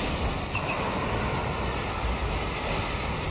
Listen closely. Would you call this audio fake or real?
fake